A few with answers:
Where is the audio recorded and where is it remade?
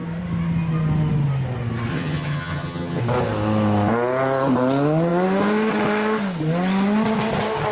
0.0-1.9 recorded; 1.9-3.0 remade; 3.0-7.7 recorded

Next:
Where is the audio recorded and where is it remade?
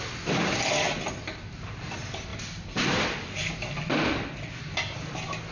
0.0-2.3 recorded; 2.3-3.5 remade; 3.5-5.5 recorded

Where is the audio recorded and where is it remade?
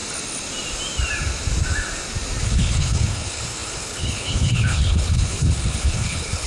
0.0-2.4 recorded; 2.4-6.5 remade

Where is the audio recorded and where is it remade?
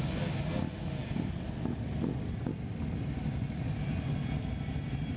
0.0-5.2 recorded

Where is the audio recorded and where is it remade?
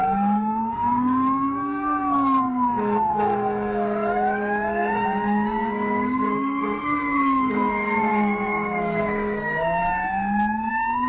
0.0-9.8 remade; 9.8-10.7 recorded; 10.7-11.1 remade